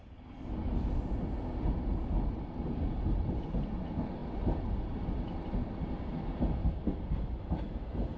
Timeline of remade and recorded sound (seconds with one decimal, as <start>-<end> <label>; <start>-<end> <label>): 0.0-8.2 recorded